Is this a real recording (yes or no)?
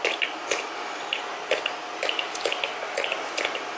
yes